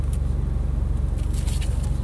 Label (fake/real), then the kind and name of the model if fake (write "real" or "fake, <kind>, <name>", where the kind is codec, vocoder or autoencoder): real